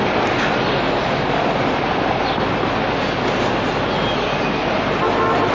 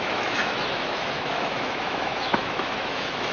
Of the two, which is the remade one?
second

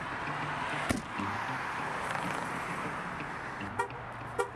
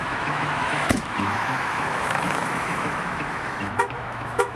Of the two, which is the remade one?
second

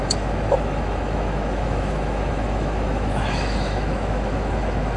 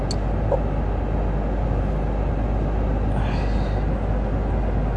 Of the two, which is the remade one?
first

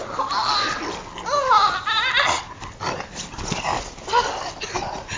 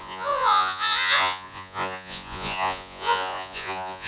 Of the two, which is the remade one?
second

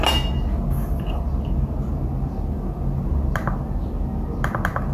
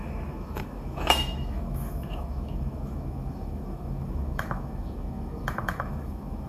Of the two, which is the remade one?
second